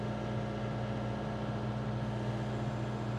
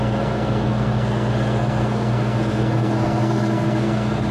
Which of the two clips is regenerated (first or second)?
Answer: second